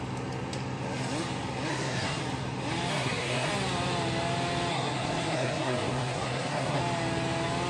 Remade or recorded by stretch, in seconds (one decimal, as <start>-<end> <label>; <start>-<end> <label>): 0.0-1.7 recorded; 1.7-2.2 remade; 2.2-2.9 recorded; 2.9-3.5 remade; 3.5-4.7 recorded; 4.7-6.8 remade; 6.8-7.7 recorded